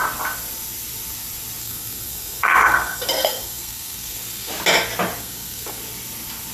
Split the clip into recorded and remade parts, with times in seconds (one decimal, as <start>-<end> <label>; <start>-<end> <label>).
0.0-1.6 recorded; 1.6-4.5 remade; 4.5-5.2 recorded; 5.2-5.8 remade; 5.8-6.5 recorded